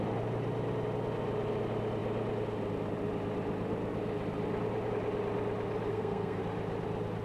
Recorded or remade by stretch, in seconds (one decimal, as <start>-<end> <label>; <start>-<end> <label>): 0.0-5.9 recorded; 5.9-6.4 remade; 6.4-7.2 recorded